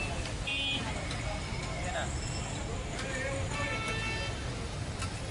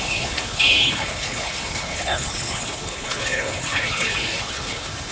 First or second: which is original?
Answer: first